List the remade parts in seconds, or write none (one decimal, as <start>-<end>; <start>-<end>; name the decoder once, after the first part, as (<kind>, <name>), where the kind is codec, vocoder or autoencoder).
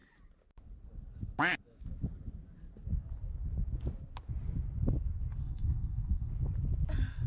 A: 5.4-6.3 (codec, SNAC)